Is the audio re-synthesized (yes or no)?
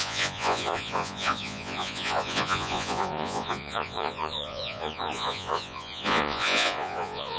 yes